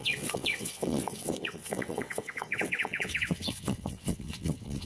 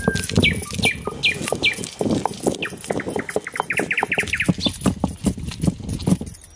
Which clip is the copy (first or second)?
first